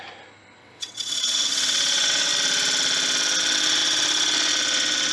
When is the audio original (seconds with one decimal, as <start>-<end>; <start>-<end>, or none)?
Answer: 0.0-0.6; 2.3-5.1